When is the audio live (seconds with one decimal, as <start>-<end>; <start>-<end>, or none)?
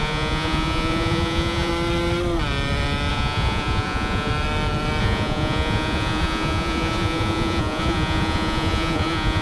1.7-3.1; 4.3-5.0